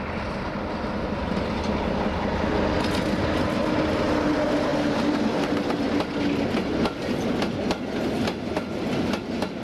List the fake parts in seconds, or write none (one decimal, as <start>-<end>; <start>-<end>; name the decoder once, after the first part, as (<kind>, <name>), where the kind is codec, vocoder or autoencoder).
none